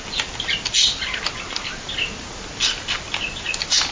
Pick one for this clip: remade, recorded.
recorded